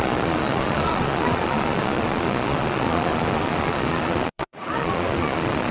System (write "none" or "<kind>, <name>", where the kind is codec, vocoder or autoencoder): vocoder, Vocos